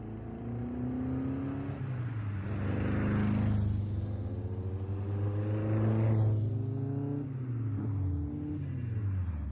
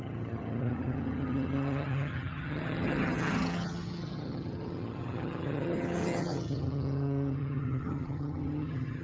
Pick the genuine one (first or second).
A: first